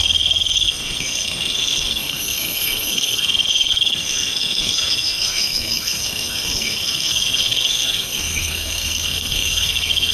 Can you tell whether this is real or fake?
fake